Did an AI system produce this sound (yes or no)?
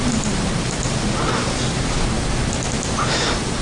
no